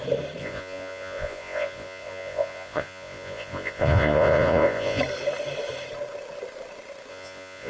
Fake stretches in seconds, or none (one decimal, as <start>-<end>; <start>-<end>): 0.4-5.0; 7.1-7.7